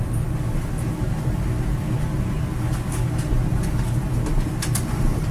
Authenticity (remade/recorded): recorded